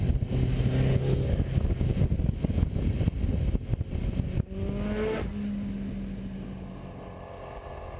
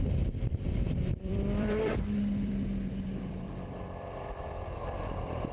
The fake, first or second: second